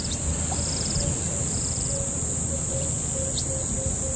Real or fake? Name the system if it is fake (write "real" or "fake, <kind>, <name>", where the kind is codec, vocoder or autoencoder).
real